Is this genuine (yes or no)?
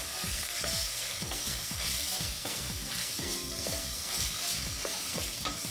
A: no